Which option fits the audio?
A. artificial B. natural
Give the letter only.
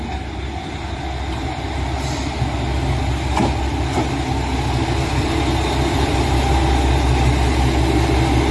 B